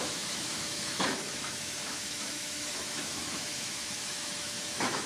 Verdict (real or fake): fake